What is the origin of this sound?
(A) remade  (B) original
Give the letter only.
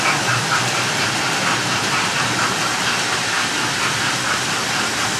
A